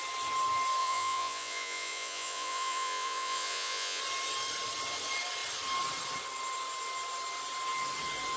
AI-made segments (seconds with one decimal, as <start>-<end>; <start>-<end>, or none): 0.8-4.0

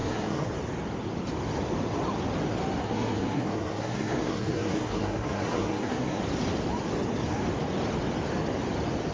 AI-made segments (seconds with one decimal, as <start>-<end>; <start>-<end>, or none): 0.0-0.5; 2.8-6.2

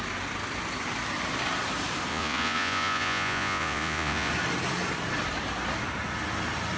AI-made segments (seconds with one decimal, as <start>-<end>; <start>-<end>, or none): 2.1-4.3

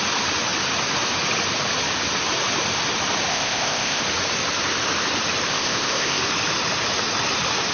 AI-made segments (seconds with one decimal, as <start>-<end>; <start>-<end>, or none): 3.3-4.0; 5.5-6.2

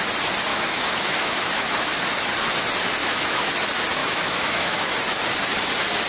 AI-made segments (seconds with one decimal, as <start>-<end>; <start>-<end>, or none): 0.5-1.9; 3.0-3.5; 4.0-4.9

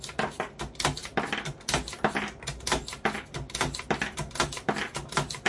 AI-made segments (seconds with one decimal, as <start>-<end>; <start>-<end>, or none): none

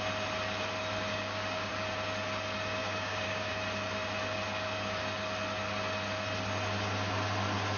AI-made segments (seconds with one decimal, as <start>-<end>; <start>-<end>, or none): 1.1-1.7; 2.8-3.5